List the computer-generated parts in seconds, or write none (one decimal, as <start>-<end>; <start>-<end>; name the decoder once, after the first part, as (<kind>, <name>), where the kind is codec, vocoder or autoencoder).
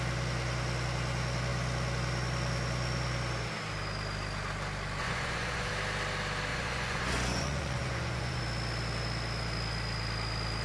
5.0-5.7 (vocoder, Vocos); 6.5-8.4